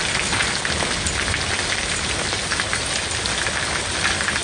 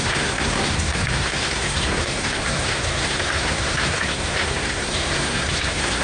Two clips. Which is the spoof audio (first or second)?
second